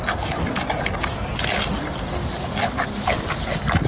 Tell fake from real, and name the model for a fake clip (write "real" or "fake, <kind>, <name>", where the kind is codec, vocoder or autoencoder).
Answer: real